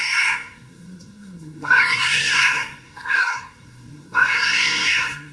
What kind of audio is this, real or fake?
fake